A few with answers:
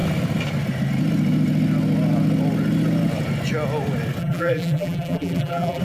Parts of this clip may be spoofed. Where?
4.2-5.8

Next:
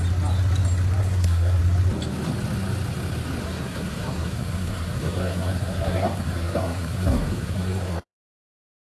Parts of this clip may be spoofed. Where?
1.0-1.6; 3.4-8.5

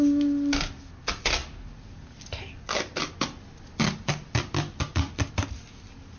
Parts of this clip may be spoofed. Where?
none